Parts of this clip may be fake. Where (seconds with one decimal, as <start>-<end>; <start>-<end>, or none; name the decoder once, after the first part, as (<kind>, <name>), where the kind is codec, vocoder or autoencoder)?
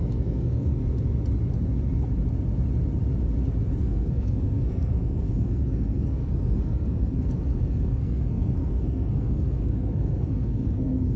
0.0-0.8 (codec, SNAC); 3.8-11.2